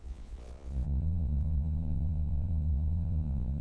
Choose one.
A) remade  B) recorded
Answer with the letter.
A